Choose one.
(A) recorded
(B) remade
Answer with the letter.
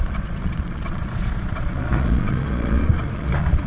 B